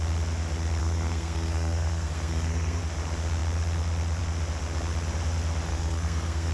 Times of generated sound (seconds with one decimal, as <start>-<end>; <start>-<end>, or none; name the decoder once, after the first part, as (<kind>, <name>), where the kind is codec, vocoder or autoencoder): 0.8-2.8 (codec, SNAC); 5.7-6.5